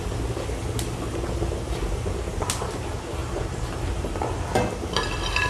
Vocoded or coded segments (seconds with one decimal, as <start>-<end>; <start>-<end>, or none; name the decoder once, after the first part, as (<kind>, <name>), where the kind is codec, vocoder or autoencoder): none